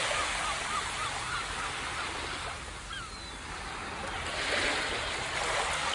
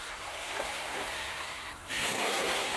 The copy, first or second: second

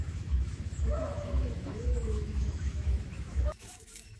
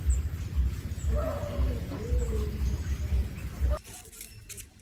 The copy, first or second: first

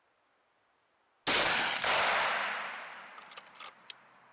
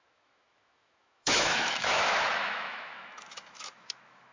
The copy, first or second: second